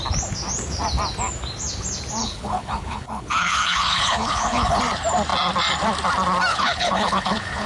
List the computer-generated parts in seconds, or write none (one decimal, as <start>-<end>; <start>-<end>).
2.2-4.8; 6.5-7.7

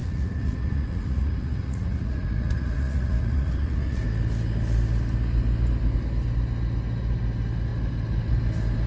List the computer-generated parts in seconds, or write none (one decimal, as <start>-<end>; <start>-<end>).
0.0-4.0

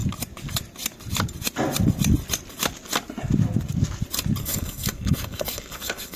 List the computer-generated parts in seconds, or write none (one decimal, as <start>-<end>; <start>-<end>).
4.4-6.2

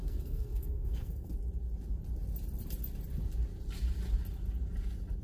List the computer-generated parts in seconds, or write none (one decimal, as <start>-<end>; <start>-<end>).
0.0-1.3